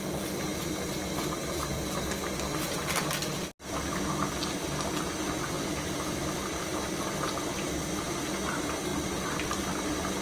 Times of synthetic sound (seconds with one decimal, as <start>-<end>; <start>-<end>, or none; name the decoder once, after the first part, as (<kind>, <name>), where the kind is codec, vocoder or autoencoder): none